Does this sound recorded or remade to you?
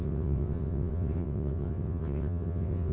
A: remade